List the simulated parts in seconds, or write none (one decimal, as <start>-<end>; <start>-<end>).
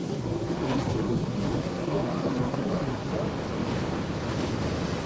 0.0-3.1